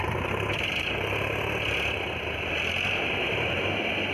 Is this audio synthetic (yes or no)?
no